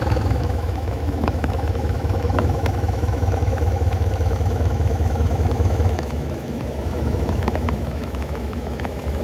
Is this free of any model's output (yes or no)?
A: no